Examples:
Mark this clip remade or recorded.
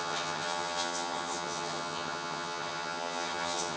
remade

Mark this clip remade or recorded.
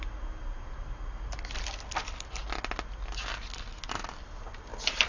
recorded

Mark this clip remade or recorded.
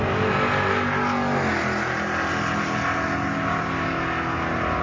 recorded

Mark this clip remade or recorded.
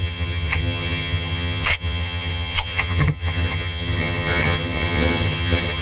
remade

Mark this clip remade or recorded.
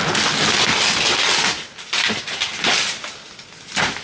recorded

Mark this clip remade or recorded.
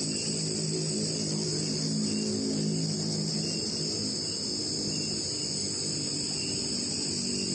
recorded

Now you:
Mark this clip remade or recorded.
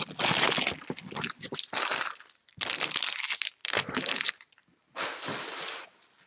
recorded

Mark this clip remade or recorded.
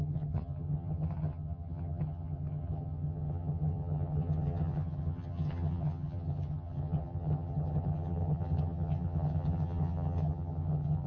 remade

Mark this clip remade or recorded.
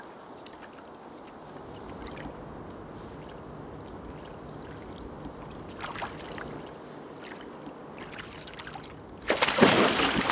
recorded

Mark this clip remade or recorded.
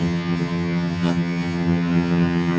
remade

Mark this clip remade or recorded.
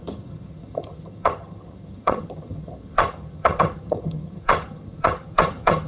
remade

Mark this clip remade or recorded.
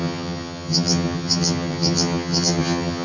remade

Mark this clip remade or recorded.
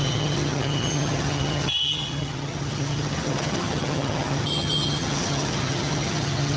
remade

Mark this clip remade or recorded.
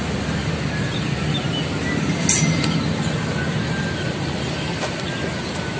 recorded